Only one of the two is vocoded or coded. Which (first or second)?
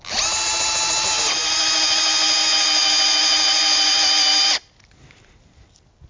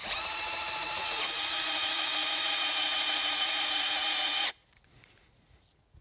second